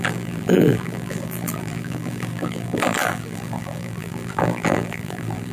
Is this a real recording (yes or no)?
no